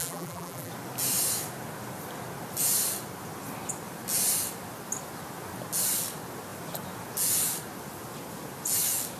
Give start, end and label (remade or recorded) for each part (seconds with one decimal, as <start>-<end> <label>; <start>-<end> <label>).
0.0-0.7 remade; 0.7-9.2 recorded